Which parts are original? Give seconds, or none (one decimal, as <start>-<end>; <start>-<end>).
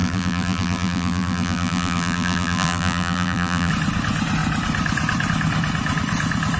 3.7-6.6